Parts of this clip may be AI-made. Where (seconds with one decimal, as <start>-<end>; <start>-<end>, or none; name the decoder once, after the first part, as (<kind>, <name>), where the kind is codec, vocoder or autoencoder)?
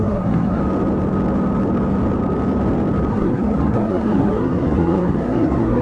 0.0-0.6 (codec, SNAC); 3.1-5.8